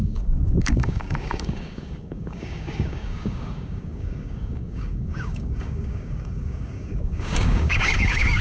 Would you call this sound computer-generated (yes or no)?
yes